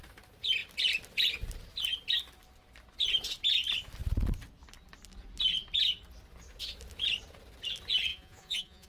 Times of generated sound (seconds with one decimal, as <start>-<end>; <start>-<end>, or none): 8.1-8.9